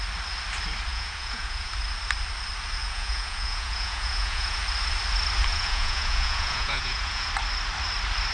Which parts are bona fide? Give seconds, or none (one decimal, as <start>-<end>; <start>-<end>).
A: 0.0-0.9; 1.7-2.8; 4.6-5.5; 7.3-8.3